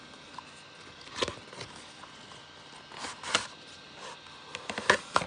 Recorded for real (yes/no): yes